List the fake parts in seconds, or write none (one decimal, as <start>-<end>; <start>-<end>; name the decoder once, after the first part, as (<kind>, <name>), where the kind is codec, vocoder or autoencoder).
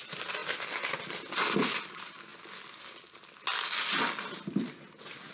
none